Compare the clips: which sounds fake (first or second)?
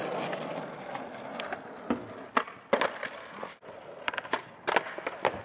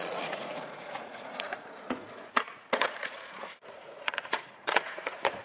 second